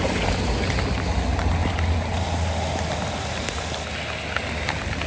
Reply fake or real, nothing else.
real